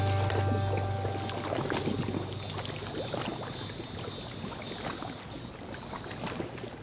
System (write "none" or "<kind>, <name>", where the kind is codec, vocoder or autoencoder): none